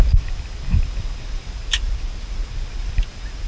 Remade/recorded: recorded